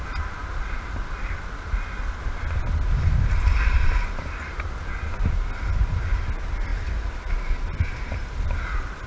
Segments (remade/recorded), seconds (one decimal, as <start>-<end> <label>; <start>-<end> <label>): 0.0-9.1 recorded